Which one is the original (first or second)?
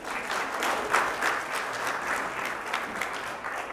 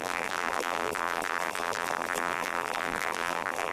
first